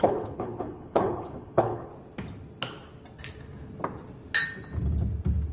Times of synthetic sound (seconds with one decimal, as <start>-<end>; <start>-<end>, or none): 0.0-1.9

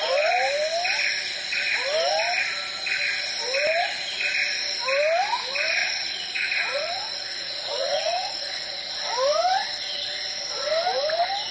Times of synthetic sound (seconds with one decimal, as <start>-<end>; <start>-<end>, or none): 5.8-8.9

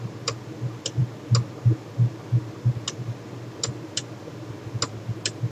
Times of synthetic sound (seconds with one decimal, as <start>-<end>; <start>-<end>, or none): none

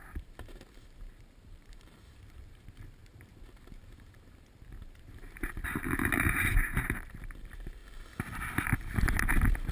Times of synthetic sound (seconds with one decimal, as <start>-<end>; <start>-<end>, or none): 0.0-7.8; 8.5-9.7